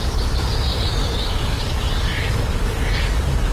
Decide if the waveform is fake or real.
fake